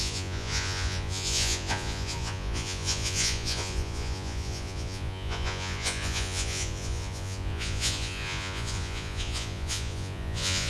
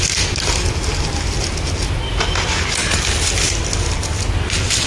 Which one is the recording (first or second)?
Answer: second